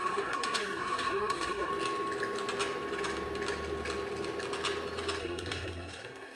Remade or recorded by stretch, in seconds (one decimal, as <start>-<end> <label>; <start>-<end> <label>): 0.0-1.7 remade; 1.7-5.2 recorded; 5.2-6.3 remade